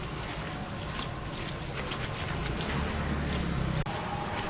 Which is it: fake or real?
real